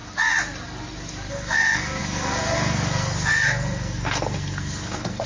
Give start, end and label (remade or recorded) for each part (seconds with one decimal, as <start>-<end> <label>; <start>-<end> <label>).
0.0-1.3 recorded; 1.3-5.3 remade